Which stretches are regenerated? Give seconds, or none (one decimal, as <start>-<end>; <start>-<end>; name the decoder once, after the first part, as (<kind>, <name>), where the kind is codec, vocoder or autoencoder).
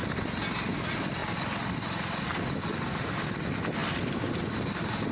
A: none